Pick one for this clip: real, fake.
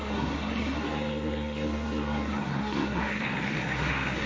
fake